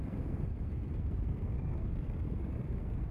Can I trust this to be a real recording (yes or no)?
no